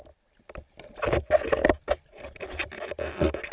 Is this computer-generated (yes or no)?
no